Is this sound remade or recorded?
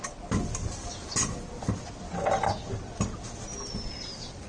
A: recorded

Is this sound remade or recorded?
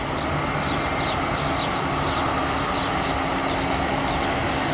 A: recorded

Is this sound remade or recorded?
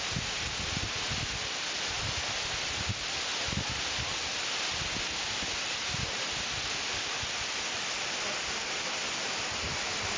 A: recorded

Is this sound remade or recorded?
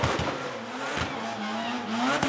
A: recorded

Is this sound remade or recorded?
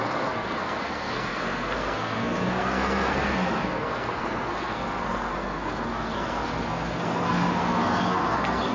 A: remade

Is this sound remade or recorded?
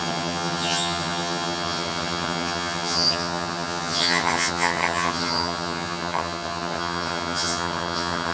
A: remade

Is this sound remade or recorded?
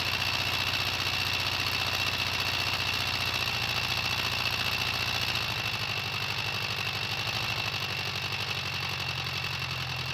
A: recorded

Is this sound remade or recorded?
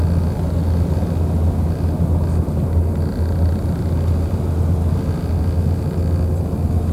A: recorded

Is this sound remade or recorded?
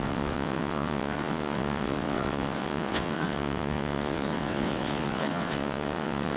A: remade